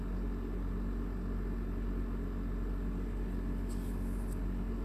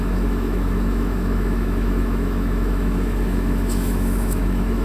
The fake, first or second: second